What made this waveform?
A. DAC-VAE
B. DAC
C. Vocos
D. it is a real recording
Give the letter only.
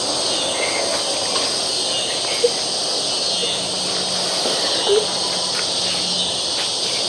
D